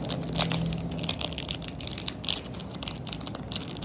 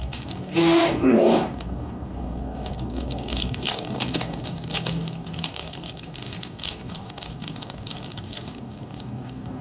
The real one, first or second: first